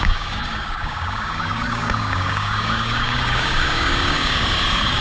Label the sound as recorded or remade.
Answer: remade